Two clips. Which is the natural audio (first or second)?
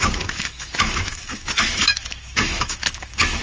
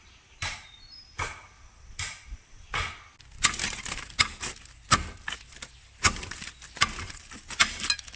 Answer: second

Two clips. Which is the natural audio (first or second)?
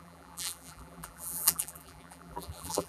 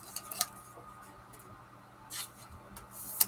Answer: second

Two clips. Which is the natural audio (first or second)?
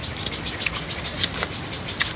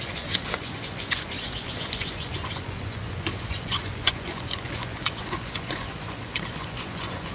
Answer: first